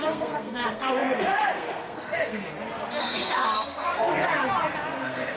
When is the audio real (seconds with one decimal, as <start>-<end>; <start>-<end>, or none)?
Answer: 2.4-3.0; 4.4-5.0